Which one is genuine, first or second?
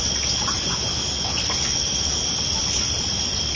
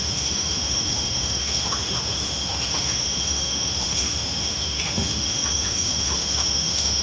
first